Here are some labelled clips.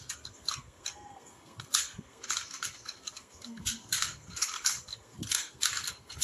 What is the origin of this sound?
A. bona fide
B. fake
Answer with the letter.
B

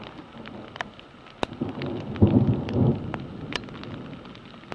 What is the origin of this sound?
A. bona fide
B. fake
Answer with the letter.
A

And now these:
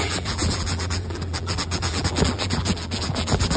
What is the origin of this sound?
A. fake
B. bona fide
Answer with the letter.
A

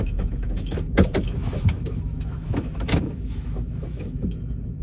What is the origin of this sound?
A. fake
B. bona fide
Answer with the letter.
A